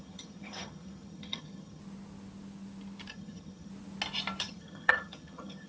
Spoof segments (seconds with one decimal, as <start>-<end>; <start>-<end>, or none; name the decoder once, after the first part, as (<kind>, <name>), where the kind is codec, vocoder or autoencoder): 0.0-1.8 (vocoder, HiFi-GAN); 3.1-3.7; 4.4-5.7